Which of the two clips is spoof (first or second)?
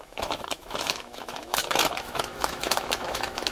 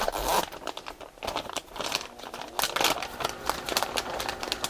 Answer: first